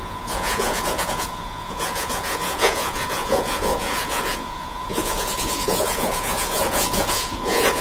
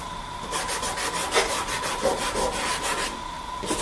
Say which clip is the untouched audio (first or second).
second